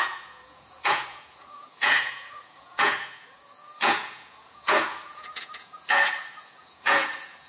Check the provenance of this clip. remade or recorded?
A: remade